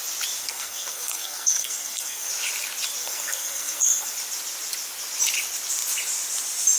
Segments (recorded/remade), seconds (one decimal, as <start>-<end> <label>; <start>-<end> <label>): 0.0-0.4 recorded; 0.4-2.3 remade; 2.3-3.0 recorded; 3.0-4.1 remade; 4.1-6.8 recorded

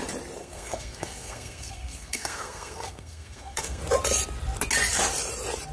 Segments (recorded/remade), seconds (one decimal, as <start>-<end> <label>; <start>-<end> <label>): 0.0-0.4 recorded; 0.4-3.8 remade; 3.8-5.7 recorded

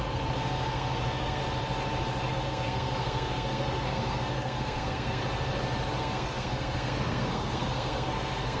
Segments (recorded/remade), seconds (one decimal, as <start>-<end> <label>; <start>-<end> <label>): 0.0-1.4 remade; 1.4-2.3 recorded; 2.3-5.2 remade; 5.2-6.0 recorded; 6.0-8.6 remade

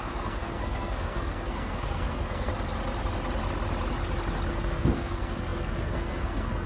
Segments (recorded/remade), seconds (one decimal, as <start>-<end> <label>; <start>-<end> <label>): 0.0-2.5 remade; 2.5-4.5 recorded; 4.5-6.7 remade

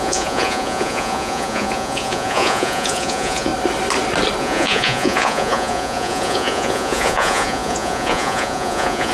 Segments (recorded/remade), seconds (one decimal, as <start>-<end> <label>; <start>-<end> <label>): 0.0-3.5 remade; 3.5-4.4 recorded; 4.4-9.1 remade